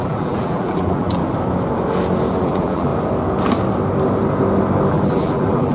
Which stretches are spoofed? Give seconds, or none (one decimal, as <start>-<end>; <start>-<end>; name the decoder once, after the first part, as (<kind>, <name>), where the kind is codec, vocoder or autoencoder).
0.0-1.2 (vocoder, BigVGAN v2); 2.3-2.9; 4.9-5.7